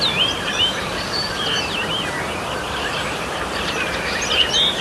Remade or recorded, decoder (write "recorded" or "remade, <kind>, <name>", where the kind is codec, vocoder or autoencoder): remade, vocoder, BigVGAN v2